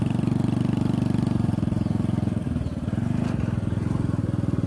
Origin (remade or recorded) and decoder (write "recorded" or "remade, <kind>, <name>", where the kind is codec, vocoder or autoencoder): recorded